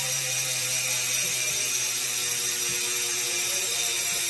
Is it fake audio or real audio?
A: fake